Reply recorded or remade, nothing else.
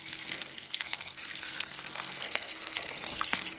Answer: remade